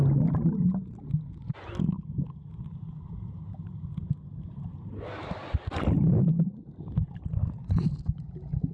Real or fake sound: real